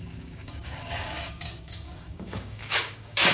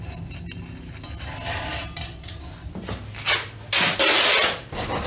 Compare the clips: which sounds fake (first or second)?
first